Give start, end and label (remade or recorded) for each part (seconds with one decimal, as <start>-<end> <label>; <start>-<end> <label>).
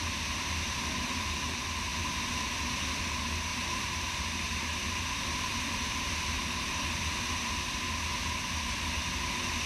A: 0.0-3.5 recorded; 3.5-6.7 remade; 6.7-9.7 recorded